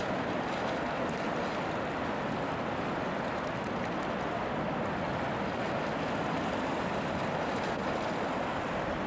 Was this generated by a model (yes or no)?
no